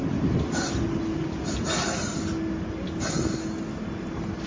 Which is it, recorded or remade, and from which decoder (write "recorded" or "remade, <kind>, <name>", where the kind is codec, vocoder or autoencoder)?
recorded